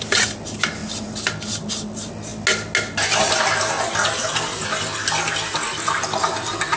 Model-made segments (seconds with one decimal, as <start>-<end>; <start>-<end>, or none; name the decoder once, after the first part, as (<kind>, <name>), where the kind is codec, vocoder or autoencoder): none